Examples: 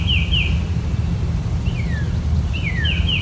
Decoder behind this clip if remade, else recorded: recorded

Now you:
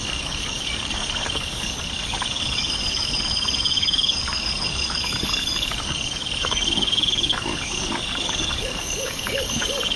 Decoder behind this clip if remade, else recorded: remade, codec, DAC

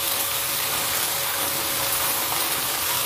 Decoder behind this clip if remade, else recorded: remade, codec, DAC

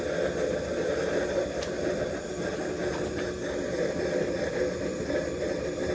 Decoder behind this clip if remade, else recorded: recorded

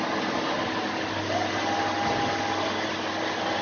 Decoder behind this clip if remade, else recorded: recorded